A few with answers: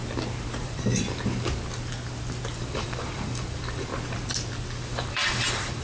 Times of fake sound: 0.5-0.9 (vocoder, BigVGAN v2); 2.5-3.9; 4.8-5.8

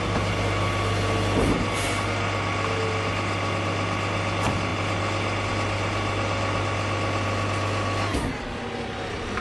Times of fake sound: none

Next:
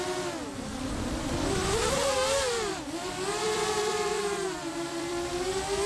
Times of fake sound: 2.7-5.4 (vocoder, BigVGAN v2)

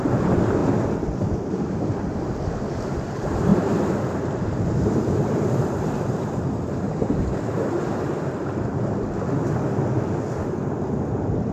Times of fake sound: 3.5-6.9 (vocoder, BigVGAN v2)